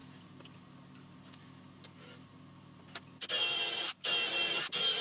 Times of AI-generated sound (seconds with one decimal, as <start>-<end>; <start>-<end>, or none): none